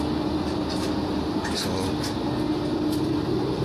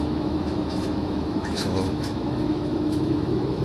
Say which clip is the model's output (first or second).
second